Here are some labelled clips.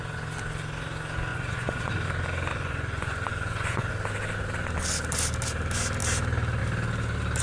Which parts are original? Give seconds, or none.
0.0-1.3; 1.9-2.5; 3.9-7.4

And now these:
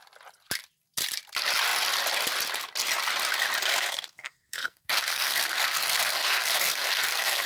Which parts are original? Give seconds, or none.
0.0-3.7

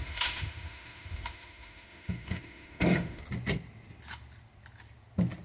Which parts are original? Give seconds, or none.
3.2-5.4

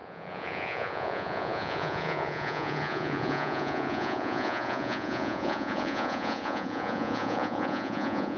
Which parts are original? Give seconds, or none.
none

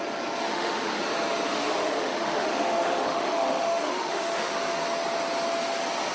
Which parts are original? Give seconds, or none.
0.0-0.5; 1.0-1.5; 4.5-6.1

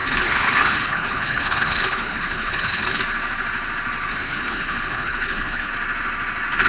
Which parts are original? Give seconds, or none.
3.0-4.1; 5.7-6.7

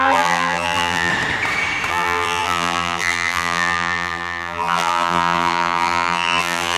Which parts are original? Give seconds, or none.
1.1-1.9

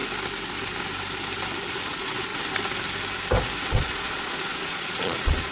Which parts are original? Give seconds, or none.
0.0-1.7; 2.3-3.7